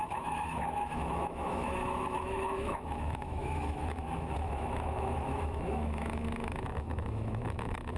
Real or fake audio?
fake